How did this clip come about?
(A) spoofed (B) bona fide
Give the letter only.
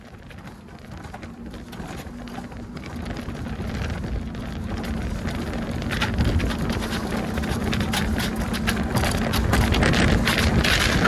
B